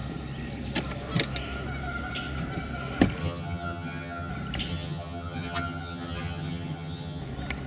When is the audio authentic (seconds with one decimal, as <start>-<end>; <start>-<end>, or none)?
0.0-3.2; 4.3-4.7; 7.2-7.7